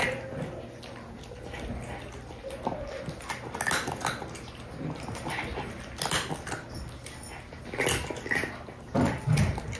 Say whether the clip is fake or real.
real